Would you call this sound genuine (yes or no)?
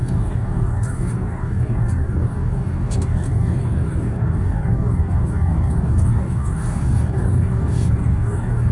no